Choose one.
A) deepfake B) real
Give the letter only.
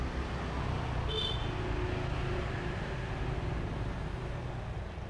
B